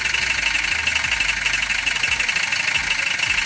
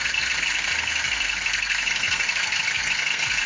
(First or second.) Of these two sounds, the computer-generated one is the second